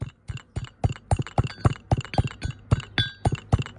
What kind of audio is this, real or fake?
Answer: real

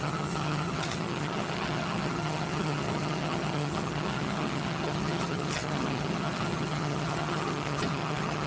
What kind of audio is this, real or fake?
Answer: fake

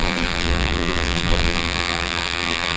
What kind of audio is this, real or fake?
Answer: fake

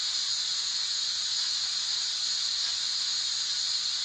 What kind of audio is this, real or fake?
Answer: real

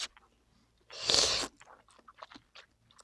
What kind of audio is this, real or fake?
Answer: real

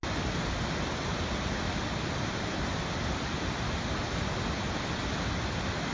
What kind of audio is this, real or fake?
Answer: real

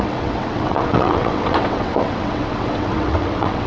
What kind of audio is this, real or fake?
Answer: fake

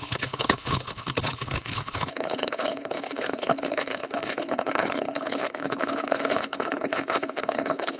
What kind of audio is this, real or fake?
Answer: fake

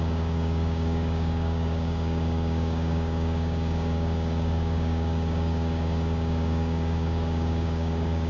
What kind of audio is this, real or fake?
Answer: fake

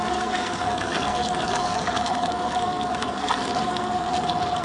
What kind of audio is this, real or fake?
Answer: fake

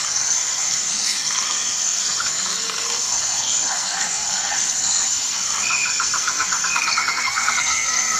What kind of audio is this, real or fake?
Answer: fake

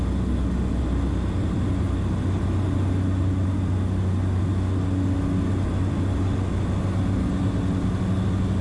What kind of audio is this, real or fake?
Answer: real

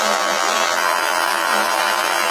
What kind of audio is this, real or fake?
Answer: fake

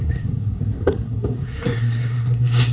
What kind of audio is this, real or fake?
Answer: fake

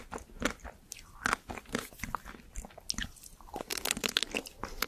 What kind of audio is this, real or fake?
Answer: real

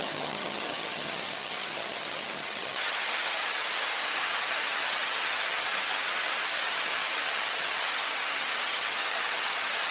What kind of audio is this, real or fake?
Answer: fake